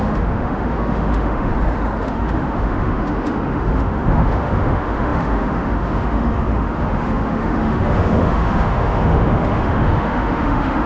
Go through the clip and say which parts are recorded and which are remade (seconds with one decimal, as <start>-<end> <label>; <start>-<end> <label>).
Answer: 0.0-1.5 remade; 1.5-2.0 recorded; 2.0-10.9 remade